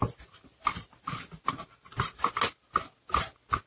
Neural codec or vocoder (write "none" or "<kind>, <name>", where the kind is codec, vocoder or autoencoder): none